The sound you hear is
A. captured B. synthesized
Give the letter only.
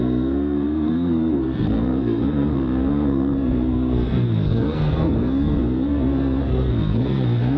B